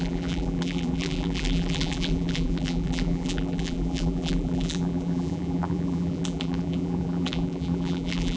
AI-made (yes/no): yes